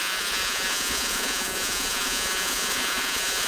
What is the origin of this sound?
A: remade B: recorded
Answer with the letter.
A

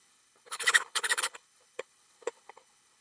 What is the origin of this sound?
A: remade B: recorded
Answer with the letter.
A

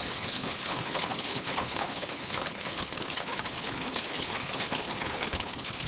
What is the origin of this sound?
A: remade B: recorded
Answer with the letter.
A